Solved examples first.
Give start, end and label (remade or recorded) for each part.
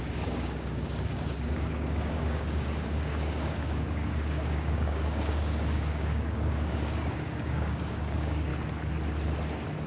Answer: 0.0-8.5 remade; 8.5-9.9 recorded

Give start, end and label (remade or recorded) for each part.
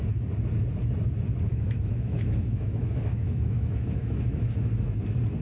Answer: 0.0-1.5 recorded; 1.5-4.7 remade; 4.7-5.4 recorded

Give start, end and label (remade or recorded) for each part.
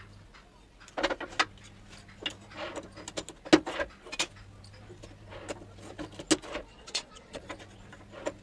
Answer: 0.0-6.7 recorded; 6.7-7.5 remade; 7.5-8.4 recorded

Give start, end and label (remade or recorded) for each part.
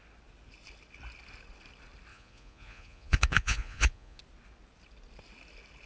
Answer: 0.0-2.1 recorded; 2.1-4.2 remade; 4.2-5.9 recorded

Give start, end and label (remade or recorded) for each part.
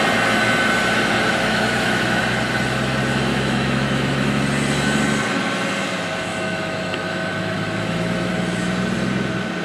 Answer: 0.0-1.3 recorded; 1.3-2.2 remade; 2.2-3.3 recorded; 3.3-4.4 remade; 4.4-6.3 recorded; 6.3-8.3 remade; 8.3-9.6 recorded